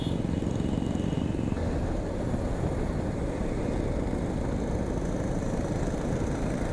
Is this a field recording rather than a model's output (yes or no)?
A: yes